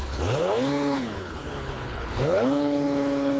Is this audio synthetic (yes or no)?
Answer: yes